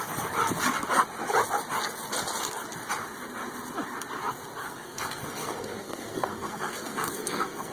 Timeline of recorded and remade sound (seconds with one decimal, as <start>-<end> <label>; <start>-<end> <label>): 0.0-4.6 recorded; 4.6-7.7 remade